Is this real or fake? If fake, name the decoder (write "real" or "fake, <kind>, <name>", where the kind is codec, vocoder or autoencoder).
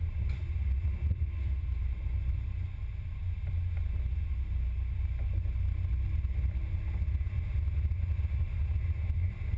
real